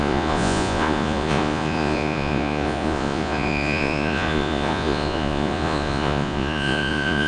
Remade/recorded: remade